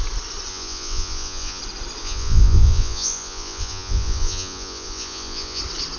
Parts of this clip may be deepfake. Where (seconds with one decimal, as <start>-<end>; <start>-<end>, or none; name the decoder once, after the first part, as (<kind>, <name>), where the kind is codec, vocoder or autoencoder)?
0.5-1.6 (vocoder, Vocos); 2.0-5.6